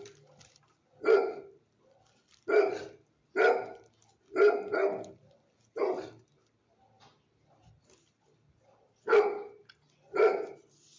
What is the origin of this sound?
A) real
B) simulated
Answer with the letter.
A